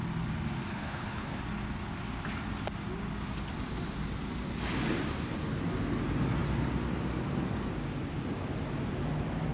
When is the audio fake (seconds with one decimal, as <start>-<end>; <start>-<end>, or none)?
0.7-1.4